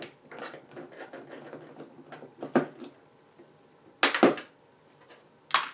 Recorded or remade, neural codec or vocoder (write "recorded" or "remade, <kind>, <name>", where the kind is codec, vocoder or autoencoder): recorded